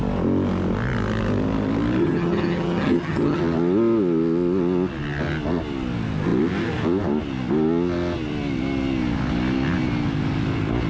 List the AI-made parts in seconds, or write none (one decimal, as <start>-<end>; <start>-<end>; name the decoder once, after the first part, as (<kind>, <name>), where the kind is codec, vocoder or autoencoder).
2.0-3.4 (vocoder, HiFi-GAN)